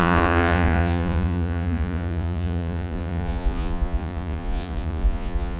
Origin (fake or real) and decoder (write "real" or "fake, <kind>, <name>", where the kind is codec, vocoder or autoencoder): fake, vocoder, Vocos